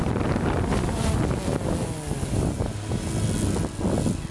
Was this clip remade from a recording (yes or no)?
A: no